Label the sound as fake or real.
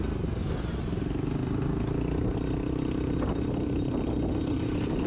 real